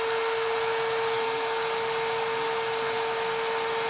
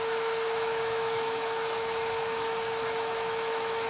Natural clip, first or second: first